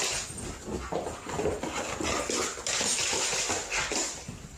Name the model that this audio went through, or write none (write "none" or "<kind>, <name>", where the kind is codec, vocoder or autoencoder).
none